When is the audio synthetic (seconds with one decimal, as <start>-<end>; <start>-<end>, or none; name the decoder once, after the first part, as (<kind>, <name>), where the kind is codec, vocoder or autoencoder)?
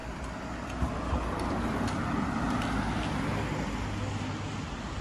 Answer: none